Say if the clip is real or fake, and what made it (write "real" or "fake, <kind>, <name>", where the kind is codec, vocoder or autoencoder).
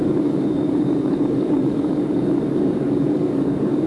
fake, codec, DAC